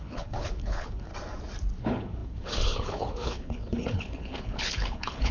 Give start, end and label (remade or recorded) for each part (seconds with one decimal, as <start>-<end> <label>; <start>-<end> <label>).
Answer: 0.0-1.1 remade; 1.1-1.8 recorded; 1.8-5.3 remade